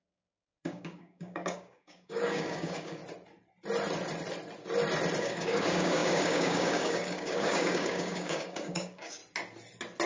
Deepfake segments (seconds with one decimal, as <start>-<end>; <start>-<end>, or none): 0.0-3.0; 5.2-9.2